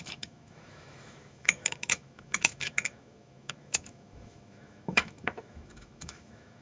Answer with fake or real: fake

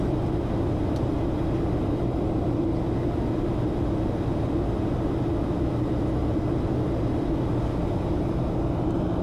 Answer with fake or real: real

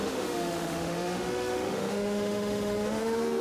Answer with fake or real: fake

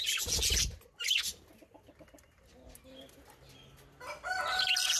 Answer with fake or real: real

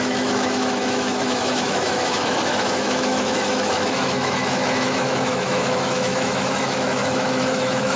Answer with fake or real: fake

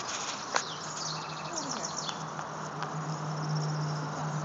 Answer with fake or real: real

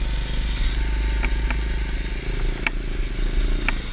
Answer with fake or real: real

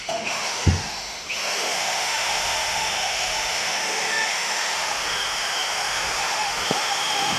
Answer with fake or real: fake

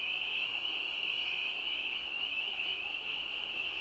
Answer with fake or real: fake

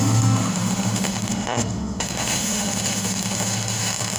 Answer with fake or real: fake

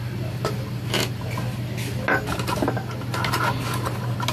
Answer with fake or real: real